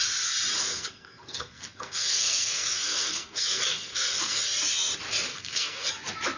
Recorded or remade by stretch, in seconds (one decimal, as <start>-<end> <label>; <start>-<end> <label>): 0.0-0.6 recorded; 0.6-4.4 remade; 4.4-5.3 recorded; 5.3-5.9 remade; 5.9-6.4 recorded